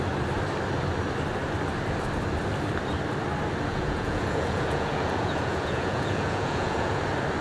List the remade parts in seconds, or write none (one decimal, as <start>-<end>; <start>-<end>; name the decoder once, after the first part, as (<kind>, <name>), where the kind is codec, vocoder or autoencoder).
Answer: 3.7-7.0 (vocoder, Vocos)